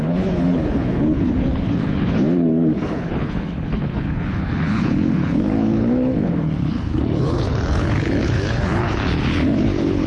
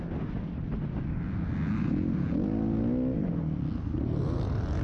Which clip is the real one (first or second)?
second